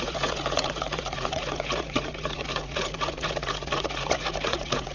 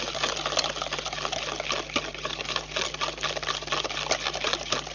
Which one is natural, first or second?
second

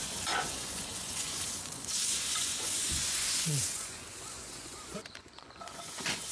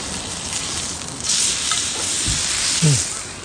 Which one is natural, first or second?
second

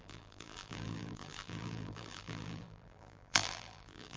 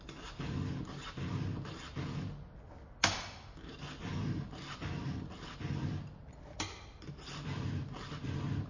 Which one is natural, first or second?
second